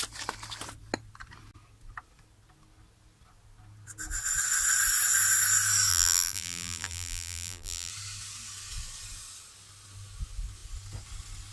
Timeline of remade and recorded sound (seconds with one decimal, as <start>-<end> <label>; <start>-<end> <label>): 0.0-5.9 recorded; 5.9-7.9 remade; 7.9-11.5 recorded